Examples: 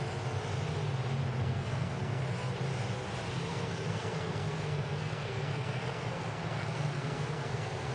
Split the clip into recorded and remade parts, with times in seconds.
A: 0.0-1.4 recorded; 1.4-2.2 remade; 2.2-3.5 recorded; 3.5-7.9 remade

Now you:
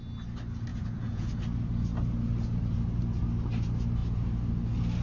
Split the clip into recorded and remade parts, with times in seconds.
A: 0.0-0.7 recorded; 0.7-1.3 remade; 1.3-5.0 recorded

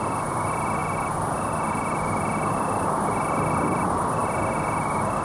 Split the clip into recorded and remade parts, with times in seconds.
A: 0.0-5.2 recorded

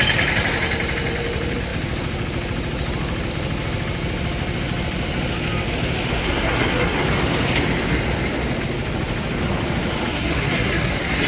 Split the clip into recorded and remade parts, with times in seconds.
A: 0.0-6.2 recorded; 6.2-7.0 remade; 7.0-10.1 recorded; 10.1-10.9 remade; 10.9-11.3 recorded

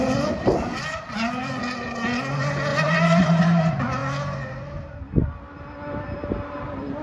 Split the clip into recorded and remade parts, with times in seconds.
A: 0.0-2.7 recorded; 2.7-3.4 remade; 3.4-7.0 recorded

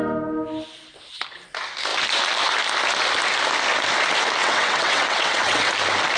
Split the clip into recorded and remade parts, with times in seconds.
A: 0.0-4.4 recorded; 4.4-5.7 remade; 5.7-6.2 recorded

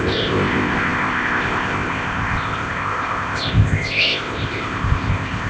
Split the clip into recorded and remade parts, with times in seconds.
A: 0.0-5.5 remade

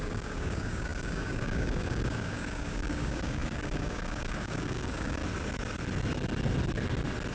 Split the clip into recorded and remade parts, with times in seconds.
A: 0.0-5.2 remade; 5.2-7.3 recorded